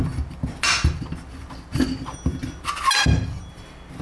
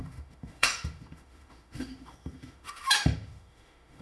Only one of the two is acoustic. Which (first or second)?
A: first